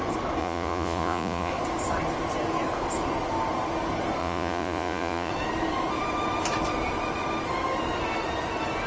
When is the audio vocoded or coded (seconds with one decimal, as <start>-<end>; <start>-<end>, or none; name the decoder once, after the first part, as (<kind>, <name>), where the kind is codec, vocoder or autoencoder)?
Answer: 0.4-1.5 (vocoder, Vocos); 4.2-5.3